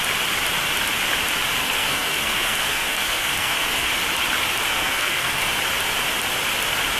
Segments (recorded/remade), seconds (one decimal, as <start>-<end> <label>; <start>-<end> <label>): 0.0-1.6 recorded; 1.6-3.9 remade; 3.9-4.7 recorded; 4.7-5.5 remade; 5.5-7.0 recorded